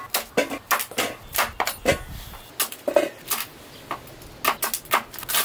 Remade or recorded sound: recorded